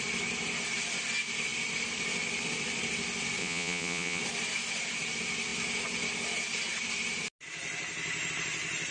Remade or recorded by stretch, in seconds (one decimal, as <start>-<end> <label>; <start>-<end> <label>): 0.0-3.4 recorded; 3.4-4.2 remade; 4.2-8.9 recorded